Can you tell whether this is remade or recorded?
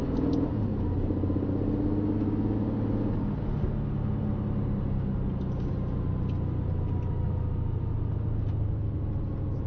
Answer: recorded